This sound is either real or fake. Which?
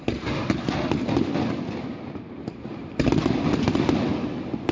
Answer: real